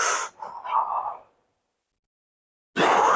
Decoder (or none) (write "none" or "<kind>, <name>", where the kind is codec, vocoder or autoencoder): none